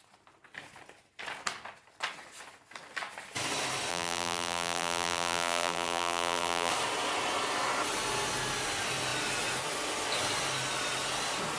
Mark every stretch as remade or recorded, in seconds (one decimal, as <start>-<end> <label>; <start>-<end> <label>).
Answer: 0.0-3.9 recorded; 3.9-6.7 remade; 6.7-11.6 recorded